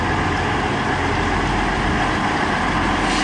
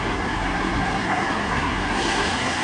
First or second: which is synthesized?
second